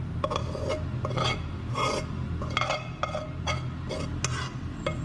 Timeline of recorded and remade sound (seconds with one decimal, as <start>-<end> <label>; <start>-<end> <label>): 0.0-5.0 recorded